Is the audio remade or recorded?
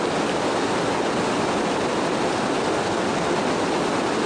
recorded